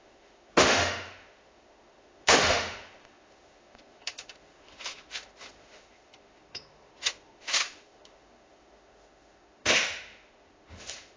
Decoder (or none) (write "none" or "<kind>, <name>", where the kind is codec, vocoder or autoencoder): autoencoder, DAC-VAE